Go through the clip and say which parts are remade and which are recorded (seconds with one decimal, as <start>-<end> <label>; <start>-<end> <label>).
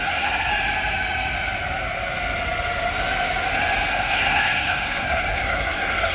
0.0-0.5 remade; 0.5-3.9 recorded; 3.9-6.1 remade